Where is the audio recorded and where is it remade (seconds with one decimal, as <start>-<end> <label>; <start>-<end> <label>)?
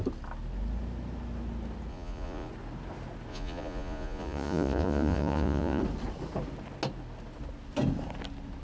0.0-1.9 recorded; 1.9-2.5 remade; 2.5-3.3 recorded; 3.3-5.8 remade; 5.8-8.6 recorded